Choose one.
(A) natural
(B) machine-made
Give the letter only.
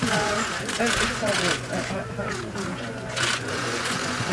B